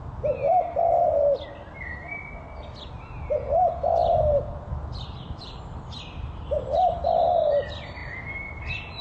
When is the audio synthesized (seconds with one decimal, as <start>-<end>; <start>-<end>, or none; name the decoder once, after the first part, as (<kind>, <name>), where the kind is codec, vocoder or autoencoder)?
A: none